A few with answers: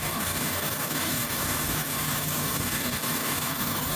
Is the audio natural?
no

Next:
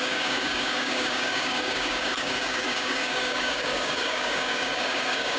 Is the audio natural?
no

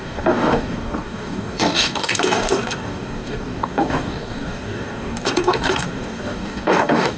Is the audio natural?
no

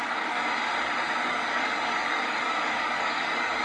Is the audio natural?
no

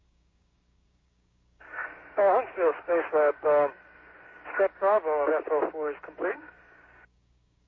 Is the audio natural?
no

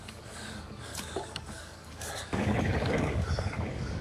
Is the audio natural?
no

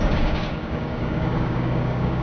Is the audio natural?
no